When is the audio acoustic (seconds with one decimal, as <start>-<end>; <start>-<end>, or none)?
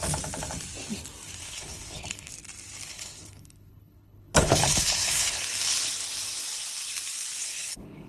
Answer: 0.0-1.4; 2.3-2.9; 5.4-7.4